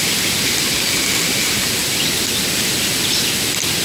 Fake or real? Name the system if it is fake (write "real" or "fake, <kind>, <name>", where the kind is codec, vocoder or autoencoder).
real